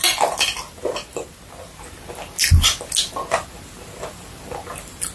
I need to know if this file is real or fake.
real